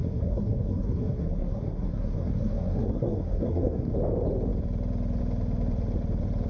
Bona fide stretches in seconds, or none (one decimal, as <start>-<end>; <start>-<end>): 3.9-6.5